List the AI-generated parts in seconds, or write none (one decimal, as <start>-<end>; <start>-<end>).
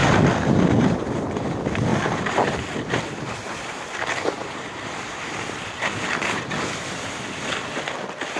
none